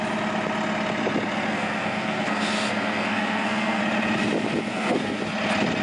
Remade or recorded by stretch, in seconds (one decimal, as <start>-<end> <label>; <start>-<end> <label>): 0.0-1.5 recorded; 1.5-3.8 remade; 3.8-4.7 recorded; 4.7-5.2 remade; 5.2-5.8 recorded